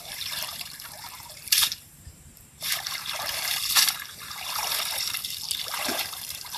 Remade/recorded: remade